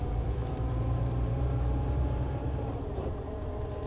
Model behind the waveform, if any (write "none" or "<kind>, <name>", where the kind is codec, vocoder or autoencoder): vocoder, BigVGAN v2